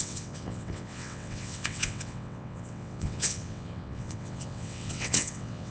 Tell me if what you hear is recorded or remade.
remade